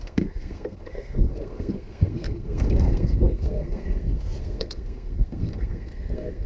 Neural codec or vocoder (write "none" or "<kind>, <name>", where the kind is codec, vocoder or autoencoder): codec, SNAC